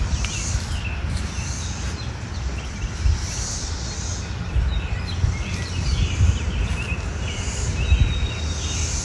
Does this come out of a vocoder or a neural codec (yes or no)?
no